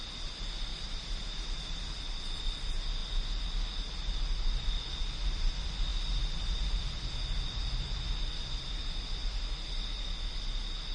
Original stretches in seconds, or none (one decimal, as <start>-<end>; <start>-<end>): 0.0-0.7; 1.6-10.9